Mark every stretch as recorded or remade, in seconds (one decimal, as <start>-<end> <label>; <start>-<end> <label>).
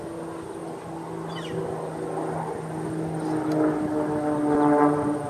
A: 0.0-5.3 recorded